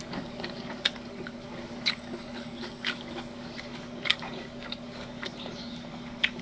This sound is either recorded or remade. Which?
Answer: remade